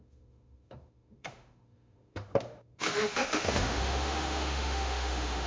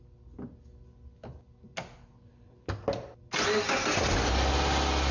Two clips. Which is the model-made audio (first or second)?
first